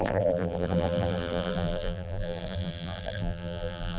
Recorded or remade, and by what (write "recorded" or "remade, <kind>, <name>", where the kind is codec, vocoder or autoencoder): remade, vocoder, BigVGAN v2